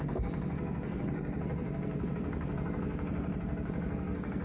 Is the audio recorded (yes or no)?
no